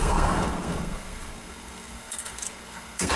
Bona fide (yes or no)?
no